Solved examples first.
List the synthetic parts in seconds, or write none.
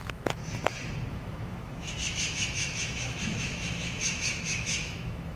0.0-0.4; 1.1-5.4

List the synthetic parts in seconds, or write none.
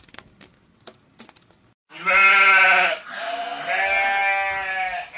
none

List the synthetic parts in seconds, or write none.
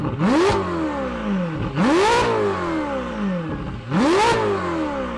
none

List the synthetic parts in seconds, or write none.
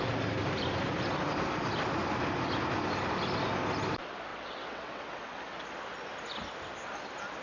4.3-5.4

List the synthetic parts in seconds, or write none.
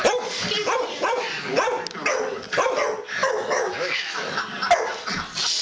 3.2-4.4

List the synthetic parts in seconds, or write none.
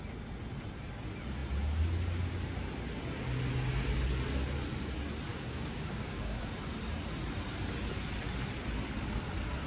5.3-6.5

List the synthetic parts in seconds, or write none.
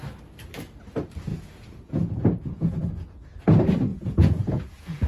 1.3-3.2; 3.9-5.1